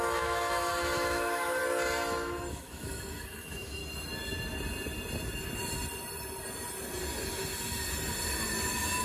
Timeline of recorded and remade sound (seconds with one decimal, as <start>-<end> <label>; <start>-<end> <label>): 0.0-1.6 remade; 1.6-2.5 recorded; 2.5-3.8 remade; 3.8-9.0 recorded